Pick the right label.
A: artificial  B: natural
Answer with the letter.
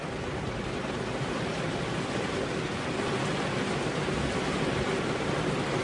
B